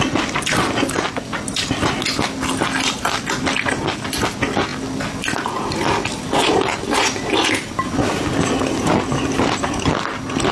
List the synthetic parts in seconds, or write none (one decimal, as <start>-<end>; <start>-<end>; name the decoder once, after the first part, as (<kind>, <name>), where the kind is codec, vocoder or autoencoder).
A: none